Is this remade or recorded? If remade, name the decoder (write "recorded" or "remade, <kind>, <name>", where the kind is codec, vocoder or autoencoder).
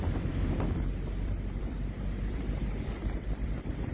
remade, vocoder, BigVGAN v2